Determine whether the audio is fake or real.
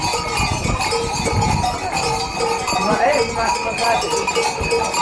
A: real